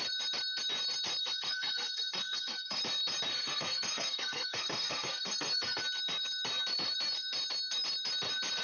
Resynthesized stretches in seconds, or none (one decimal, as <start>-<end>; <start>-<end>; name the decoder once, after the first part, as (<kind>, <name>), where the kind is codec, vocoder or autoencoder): 1.2-2.8 (codec, SNAC); 3.3-5.8